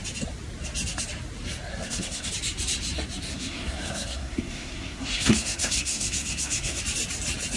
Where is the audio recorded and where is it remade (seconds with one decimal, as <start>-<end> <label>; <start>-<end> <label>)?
0.0-1.7 recorded; 1.7-2.3 remade; 2.3-3.3 recorded; 3.3-6.8 remade; 6.8-7.6 recorded